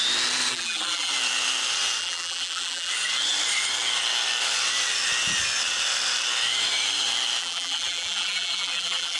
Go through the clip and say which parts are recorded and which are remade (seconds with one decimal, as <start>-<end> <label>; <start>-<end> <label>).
0.0-0.5 recorded; 0.5-1.1 remade; 1.1-2.0 recorded; 2.0-2.9 remade; 2.9-7.4 recorded; 7.4-9.2 remade